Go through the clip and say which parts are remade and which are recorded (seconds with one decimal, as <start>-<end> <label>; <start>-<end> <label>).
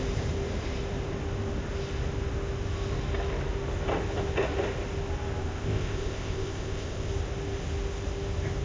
0.0-5.4 recorded; 5.4-7.1 remade; 7.1-8.6 recorded